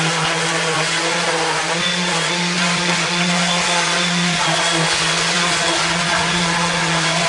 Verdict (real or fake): fake